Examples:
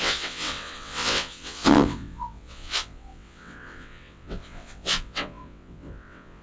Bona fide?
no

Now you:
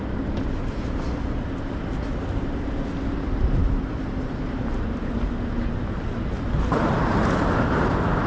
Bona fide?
yes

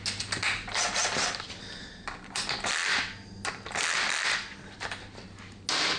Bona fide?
yes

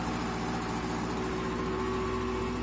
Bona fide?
yes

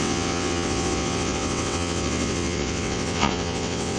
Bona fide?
no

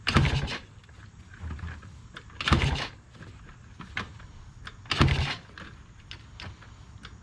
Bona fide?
yes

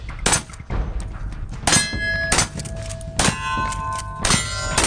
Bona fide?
yes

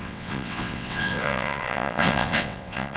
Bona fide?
no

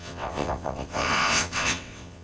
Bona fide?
no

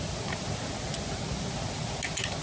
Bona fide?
yes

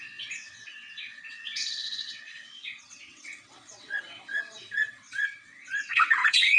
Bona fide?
no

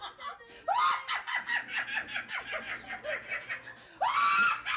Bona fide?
yes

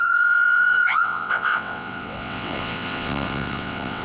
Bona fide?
no